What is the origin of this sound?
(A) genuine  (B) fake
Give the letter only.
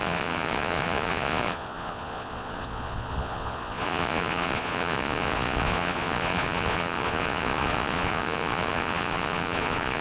B